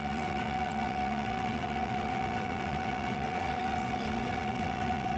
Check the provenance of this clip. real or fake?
fake